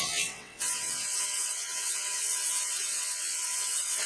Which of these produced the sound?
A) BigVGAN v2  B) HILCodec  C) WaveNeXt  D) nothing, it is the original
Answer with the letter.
C